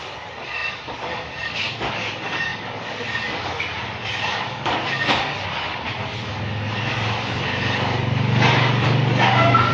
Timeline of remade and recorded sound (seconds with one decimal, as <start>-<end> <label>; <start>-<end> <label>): 0.0-9.7 remade